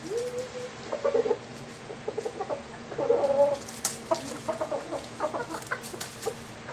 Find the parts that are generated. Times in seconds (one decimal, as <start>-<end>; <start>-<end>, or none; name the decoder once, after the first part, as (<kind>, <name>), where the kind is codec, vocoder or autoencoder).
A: 1.5-2.9 (vocoder, Vocos); 4.4-5.2